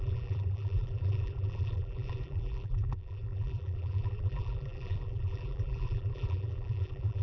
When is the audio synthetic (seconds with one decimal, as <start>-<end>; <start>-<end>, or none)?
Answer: 0.0-7.2